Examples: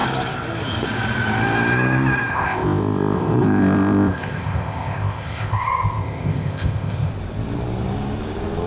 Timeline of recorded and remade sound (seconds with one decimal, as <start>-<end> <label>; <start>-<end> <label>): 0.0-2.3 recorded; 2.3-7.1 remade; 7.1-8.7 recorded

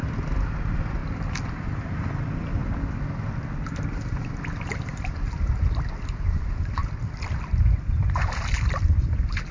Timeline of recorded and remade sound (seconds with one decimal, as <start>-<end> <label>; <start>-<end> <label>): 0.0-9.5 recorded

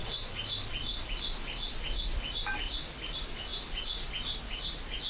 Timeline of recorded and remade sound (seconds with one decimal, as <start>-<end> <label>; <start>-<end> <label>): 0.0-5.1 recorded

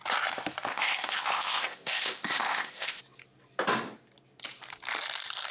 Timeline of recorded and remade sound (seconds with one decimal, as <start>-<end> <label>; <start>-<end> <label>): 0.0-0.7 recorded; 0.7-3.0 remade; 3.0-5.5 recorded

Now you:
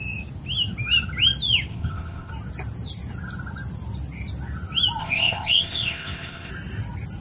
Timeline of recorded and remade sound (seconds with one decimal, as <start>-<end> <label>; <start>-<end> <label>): 0.0-1.7 recorded; 1.7-2.3 remade; 2.3-5.0 recorded; 5.0-6.5 remade; 6.5-7.2 recorded

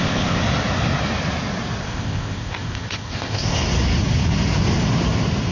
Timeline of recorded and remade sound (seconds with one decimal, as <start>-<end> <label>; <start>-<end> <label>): 0.0-0.4 remade; 0.4-1.8 recorded; 1.8-3.6 remade; 3.6-5.5 recorded

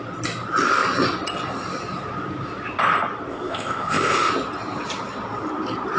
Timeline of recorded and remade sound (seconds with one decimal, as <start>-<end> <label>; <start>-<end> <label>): 0.0-3.3 recorded; 3.3-4.3 remade; 4.3-6.0 recorded